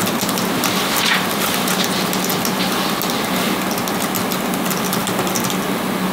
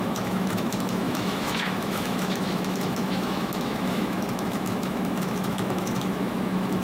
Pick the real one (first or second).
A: first